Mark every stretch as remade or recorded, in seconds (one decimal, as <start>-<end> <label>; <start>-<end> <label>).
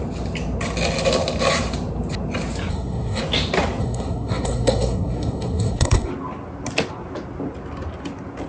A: 0.0-2.7 recorded; 2.7-3.2 remade; 3.2-3.8 recorded; 3.8-6.1 remade; 6.1-8.5 recorded